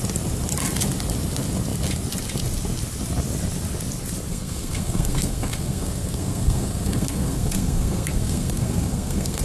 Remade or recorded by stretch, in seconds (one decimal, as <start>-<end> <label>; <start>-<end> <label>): 0.0-4.3 recorded; 4.3-9.4 remade